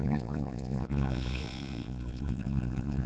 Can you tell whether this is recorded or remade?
remade